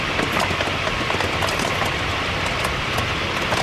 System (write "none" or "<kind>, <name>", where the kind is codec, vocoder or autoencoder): none